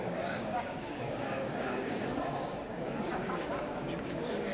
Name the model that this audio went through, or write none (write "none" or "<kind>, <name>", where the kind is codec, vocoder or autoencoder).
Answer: codec, DAC